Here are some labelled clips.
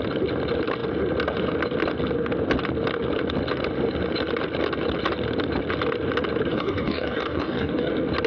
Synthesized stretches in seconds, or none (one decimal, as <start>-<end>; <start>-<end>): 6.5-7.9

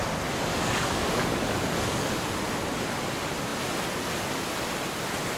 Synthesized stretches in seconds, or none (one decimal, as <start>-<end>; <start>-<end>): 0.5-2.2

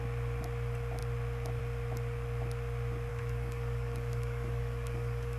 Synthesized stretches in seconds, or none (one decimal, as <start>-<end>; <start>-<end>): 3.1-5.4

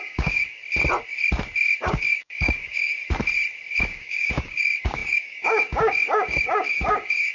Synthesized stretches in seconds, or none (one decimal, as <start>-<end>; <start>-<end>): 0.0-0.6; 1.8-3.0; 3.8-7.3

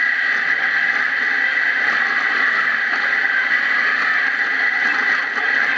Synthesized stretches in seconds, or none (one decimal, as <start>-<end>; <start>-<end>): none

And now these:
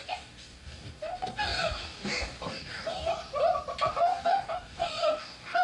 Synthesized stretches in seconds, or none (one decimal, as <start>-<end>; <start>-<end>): 0.0-3.1; 3.9-5.6

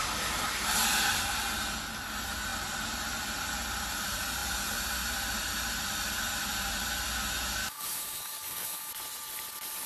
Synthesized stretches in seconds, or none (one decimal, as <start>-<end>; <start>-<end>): 7.6-8.9

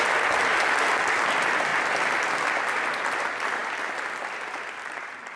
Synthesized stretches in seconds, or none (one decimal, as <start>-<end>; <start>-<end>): none